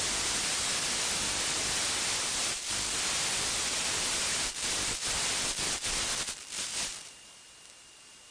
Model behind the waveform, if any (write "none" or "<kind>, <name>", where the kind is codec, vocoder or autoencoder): vocoder, BigVGAN v2